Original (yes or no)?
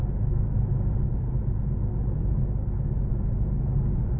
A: yes